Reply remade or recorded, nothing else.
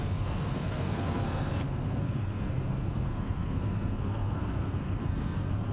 remade